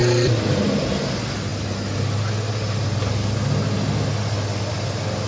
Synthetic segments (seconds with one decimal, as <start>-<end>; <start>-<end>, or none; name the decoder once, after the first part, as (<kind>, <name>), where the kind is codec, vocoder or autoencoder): 0.0-0.5 (vocoder, BigVGAN v2)